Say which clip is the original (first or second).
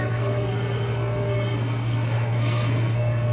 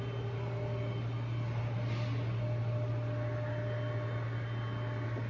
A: second